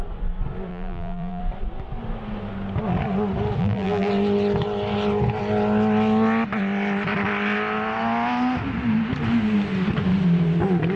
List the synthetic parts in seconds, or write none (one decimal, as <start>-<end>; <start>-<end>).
0.7-1.4; 3.6-4.1